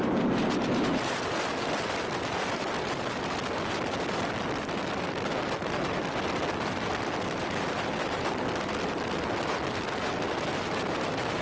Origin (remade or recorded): recorded